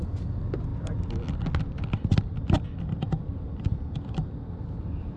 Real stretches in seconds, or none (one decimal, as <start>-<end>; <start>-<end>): 0.0-5.2